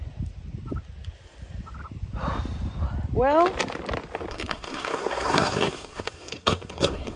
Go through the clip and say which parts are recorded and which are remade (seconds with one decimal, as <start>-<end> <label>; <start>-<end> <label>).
0.0-4.3 recorded; 4.3-7.2 remade